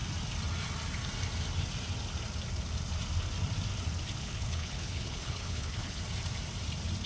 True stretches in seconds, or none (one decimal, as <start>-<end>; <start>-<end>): 0.0-4.2; 6.0-7.1